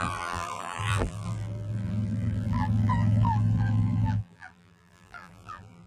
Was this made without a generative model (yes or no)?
no